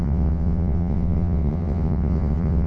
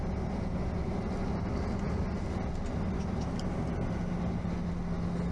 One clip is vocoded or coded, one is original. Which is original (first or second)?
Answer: second